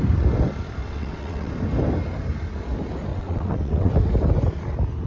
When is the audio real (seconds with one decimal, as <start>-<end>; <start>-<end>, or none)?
0.0-0.8; 1.5-3.1; 3.9-5.1